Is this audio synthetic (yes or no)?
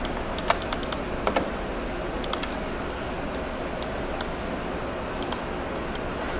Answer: no